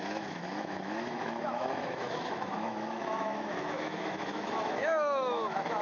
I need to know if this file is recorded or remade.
remade